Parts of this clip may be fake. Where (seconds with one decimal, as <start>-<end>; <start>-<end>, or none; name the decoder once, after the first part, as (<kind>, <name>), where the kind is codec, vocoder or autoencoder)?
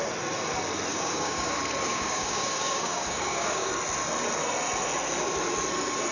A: 0.9-1.5 (codec, DAC); 1.9-3.7